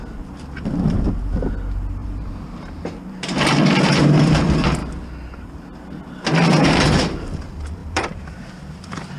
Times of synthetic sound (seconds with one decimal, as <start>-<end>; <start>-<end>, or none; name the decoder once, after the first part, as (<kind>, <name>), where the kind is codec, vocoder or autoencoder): 2.0-3.6 (vocoder, BigVGAN v2); 7.8-8.3